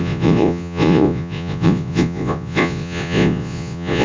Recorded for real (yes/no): no